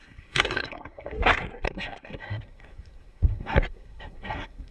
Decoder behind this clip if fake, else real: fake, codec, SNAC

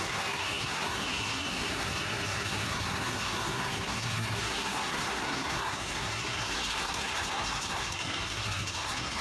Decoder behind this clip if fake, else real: fake, codec, SNAC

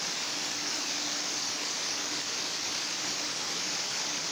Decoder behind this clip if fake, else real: fake, codec, DAC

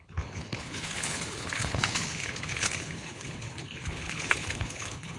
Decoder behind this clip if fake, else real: fake, codec, HILCodec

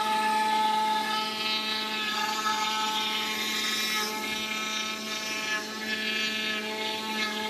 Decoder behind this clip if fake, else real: real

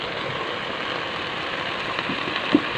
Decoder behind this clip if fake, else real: real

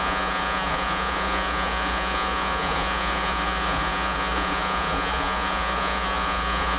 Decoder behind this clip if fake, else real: fake, vocoder, Vocos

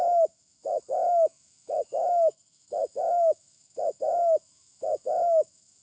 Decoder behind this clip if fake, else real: fake, autoencoder, DAC-VAE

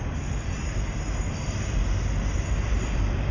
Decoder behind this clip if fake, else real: fake, vocoder, BigVGAN v2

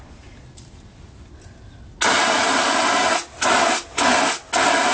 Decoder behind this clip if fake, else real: real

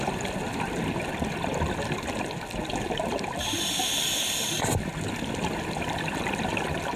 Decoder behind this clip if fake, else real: real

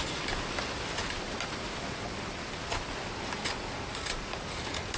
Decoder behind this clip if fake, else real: real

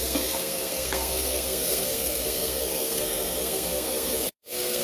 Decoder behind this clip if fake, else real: fake, codec, SNAC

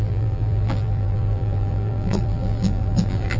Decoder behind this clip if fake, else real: fake, vocoder, BigVGAN v2